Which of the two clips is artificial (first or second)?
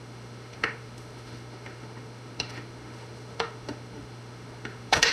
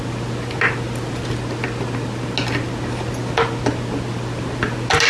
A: first